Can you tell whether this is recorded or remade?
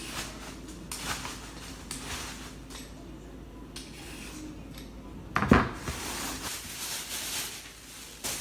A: recorded